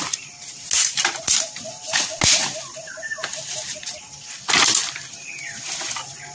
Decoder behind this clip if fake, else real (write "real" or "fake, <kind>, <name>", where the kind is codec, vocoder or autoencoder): real